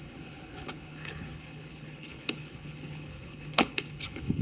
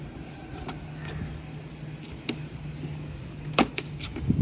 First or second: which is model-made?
first